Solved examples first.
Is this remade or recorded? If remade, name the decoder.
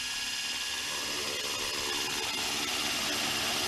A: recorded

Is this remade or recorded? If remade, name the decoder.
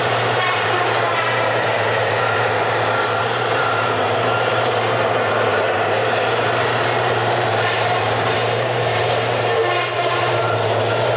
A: remade, vocoder, BigVGAN v2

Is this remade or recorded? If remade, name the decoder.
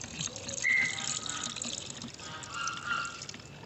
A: recorded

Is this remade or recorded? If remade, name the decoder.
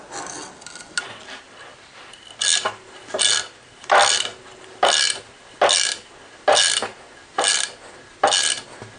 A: recorded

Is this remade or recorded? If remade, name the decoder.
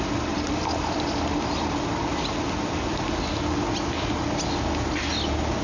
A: recorded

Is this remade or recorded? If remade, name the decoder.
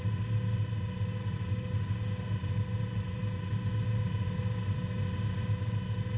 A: recorded